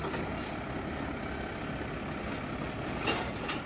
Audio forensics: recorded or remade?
recorded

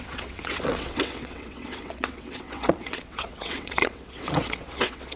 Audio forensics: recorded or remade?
remade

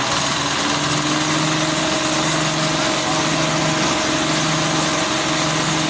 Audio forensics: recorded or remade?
recorded